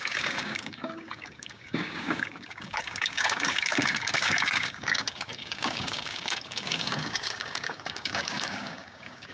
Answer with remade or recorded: remade